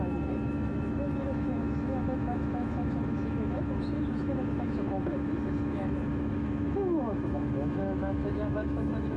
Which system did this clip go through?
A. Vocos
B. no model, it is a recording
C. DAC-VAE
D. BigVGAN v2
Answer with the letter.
C